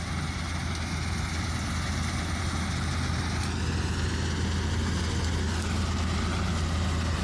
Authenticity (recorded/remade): recorded